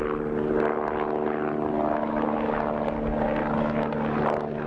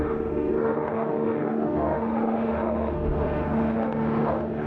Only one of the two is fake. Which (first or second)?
second